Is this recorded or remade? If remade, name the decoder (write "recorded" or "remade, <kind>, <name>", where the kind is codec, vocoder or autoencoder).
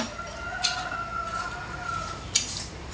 recorded